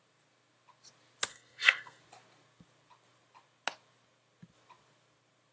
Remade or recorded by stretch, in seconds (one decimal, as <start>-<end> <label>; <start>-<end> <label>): 0.0-1.3 recorded; 1.3-2.0 remade; 2.0-5.5 recorded